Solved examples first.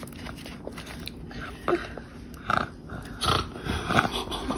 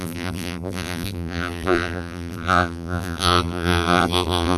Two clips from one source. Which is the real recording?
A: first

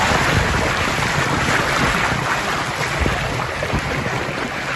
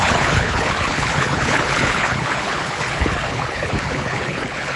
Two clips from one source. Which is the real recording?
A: first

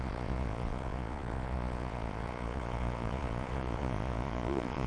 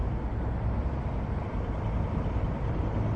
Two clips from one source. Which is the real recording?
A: second